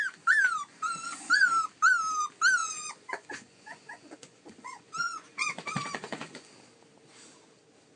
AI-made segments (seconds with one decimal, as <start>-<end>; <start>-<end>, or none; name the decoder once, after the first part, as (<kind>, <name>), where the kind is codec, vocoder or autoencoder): 0.7-1.3 (vocoder, Vocos); 2.6-6.5